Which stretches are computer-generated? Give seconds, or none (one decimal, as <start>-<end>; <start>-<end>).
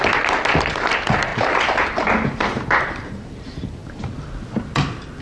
1.3-4.1